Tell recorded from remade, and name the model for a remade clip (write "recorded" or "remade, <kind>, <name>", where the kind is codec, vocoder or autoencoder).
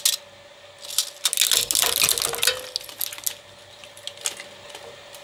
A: recorded